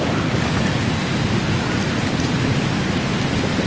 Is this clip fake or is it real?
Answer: real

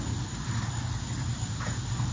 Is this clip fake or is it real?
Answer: real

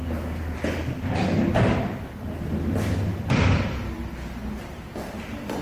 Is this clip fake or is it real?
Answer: real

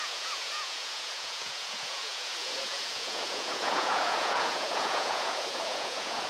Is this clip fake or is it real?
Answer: fake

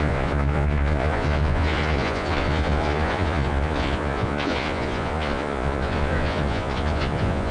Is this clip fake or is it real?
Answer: fake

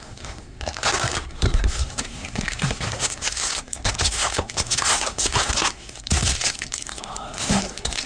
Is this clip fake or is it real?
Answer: fake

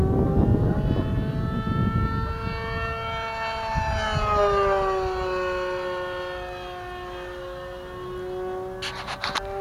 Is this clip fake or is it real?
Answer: real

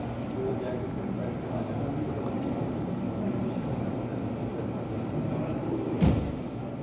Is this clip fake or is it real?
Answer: fake